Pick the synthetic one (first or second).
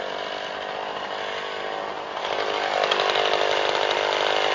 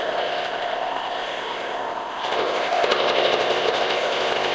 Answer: second